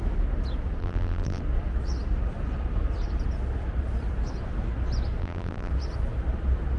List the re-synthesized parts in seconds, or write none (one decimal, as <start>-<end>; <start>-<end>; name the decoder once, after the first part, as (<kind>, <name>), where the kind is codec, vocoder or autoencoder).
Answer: 0.8-1.4 (vocoder, BigVGAN v2); 5.2-5.7